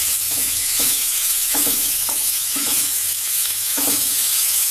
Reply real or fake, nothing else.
fake